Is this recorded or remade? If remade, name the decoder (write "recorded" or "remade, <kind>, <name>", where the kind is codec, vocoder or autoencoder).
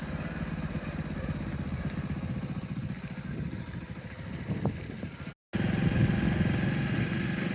recorded